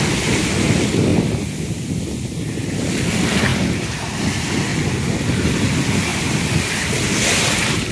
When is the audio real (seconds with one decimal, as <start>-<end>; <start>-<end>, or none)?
0.0-7.9